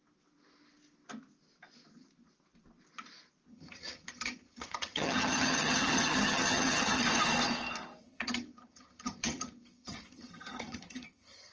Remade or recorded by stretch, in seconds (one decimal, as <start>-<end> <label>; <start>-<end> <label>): 0.0-3.5 recorded; 3.5-7.0 remade; 7.0-8.0 recorded; 8.0-11.5 remade